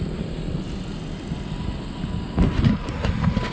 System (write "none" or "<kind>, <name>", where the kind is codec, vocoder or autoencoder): none